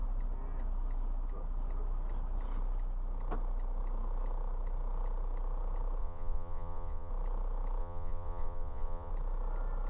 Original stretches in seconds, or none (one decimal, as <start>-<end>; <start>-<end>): 0.0-6.0; 7.1-7.8; 9.1-9.9